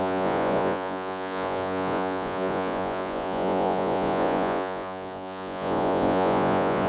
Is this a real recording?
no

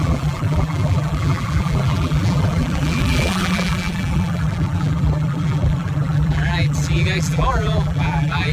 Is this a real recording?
no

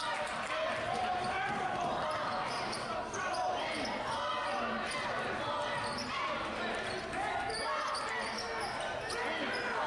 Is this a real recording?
yes